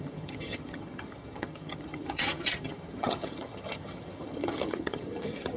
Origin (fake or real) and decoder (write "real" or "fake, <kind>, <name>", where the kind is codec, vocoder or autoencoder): fake, vocoder, HiFi-GAN